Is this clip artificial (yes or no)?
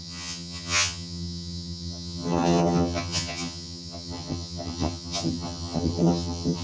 yes